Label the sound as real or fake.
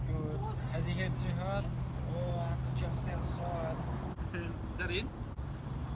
real